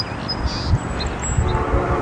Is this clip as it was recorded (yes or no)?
yes